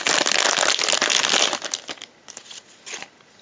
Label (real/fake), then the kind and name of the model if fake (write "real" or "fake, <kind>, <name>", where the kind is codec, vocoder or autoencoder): real